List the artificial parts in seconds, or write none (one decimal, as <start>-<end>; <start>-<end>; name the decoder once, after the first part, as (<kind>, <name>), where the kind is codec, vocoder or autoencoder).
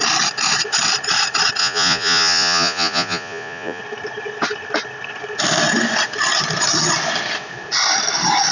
1.6-3.8 (vocoder, Vocos)